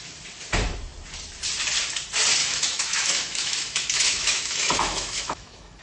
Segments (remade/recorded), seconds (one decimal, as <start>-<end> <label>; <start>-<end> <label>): 0.0-2.4 recorded; 2.4-5.8 remade